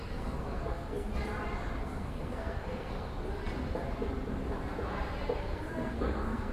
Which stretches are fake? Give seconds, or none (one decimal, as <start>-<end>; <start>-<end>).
0.0-1.1; 1.8-3.1; 5.4-6.5